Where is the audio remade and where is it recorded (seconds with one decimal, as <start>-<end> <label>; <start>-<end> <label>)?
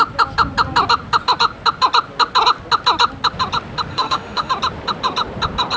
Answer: 0.0-3.9 recorded; 3.9-4.5 remade; 4.5-5.8 recorded